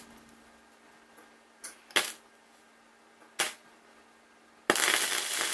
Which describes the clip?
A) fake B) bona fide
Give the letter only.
B